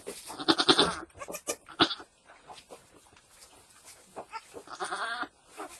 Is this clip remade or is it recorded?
recorded